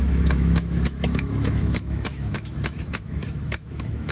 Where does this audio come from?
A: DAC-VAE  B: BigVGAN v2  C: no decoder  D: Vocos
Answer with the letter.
A